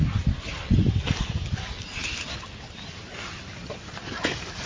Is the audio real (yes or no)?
yes